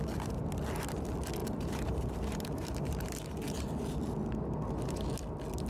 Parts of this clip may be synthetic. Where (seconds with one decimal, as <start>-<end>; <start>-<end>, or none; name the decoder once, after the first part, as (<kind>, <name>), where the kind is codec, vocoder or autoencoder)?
1.4-3.3 (vocoder, BigVGAN v2)